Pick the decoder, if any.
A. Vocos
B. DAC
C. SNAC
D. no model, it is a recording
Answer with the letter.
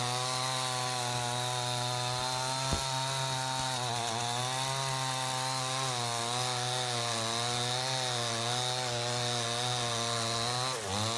D